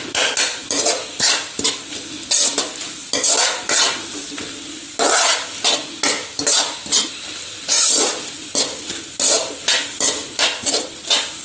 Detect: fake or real real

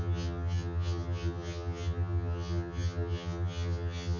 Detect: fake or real fake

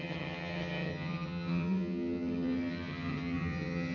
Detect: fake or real fake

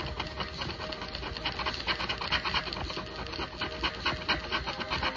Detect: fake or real real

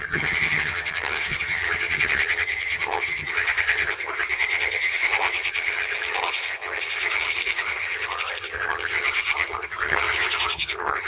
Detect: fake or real fake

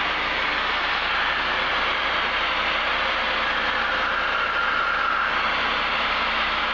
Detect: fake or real real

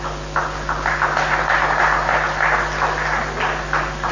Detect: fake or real real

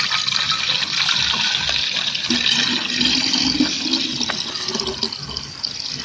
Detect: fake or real real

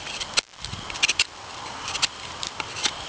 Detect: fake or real real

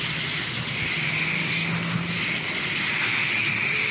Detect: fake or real real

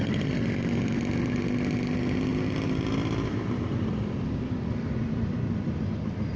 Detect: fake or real real